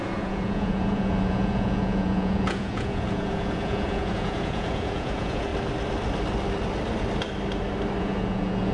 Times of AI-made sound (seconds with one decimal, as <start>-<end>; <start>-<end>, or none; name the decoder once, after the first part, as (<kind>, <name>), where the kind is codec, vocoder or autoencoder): 0.0-5.5 (vocoder, Vocos); 8.0-8.7